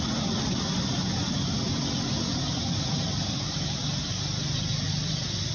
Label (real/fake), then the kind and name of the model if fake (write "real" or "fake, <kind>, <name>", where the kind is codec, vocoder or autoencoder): real